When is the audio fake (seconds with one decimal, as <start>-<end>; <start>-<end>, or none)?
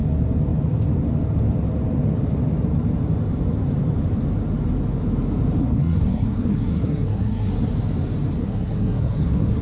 5.6-7.7; 8.4-9.6